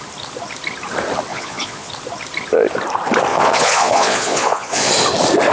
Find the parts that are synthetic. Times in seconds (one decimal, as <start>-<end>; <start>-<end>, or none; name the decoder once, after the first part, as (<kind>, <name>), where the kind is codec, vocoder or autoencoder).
1.3-1.9 (vocoder, Vocos); 3.3-4.9